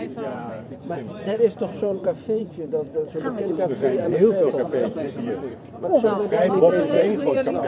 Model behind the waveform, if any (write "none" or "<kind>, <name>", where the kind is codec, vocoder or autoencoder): vocoder, Vocos